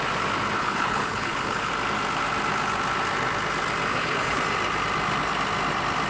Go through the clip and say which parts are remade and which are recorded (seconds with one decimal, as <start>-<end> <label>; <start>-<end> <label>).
0.0-0.6 recorded; 0.6-1.7 remade; 1.7-3.9 recorded; 3.9-4.4 remade; 4.4-6.1 recorded